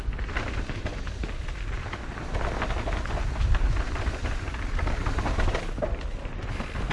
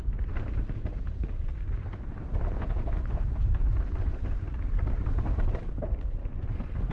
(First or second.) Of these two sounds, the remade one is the second